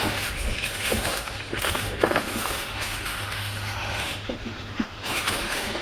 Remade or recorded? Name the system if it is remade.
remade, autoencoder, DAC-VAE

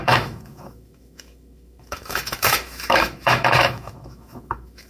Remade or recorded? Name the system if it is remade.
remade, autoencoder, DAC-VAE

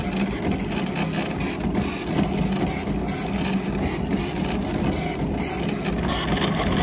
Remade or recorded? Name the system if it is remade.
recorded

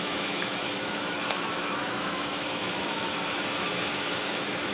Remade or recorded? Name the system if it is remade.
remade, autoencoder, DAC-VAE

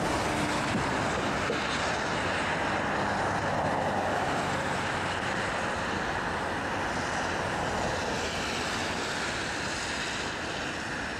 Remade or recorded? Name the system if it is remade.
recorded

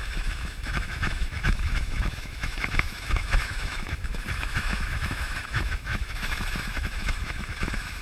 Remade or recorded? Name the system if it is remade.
remade, autoencoder, DAC-VAE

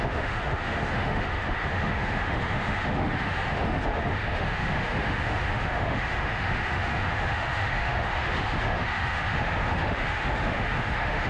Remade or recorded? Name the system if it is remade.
remade, autoencoder, DAC-VAE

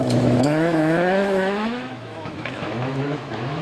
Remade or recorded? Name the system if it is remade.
remade, autoencoder, DAC-VAE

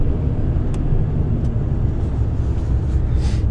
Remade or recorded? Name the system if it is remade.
recorded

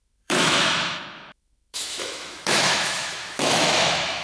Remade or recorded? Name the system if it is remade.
remade, autoencoder, DAC-VAE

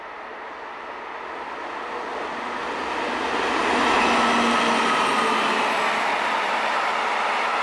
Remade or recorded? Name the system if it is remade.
recorded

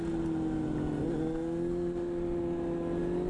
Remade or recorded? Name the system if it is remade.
recorded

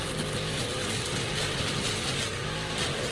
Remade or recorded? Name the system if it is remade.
recorded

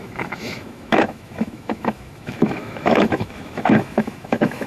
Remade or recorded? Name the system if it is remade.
remade, autoencoder, DAC-VAE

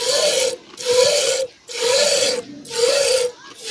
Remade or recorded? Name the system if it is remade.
recorded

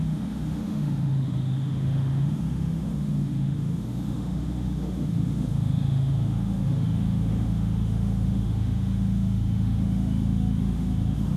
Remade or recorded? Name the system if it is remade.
remade, autoencoder, DAC-VAE